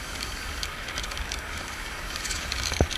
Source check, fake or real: fake